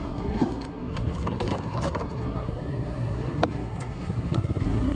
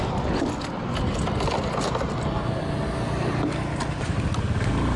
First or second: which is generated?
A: first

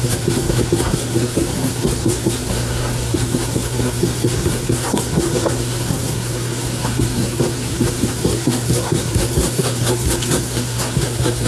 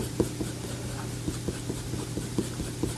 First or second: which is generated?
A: first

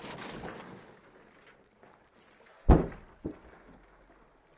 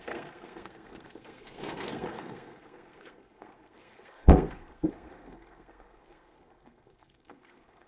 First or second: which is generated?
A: second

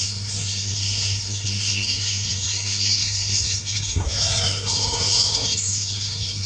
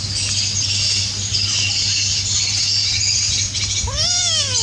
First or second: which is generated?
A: first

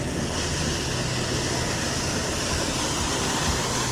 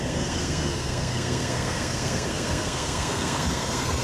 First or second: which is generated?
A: second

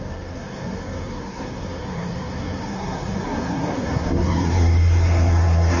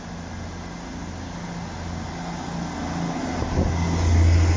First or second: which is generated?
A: first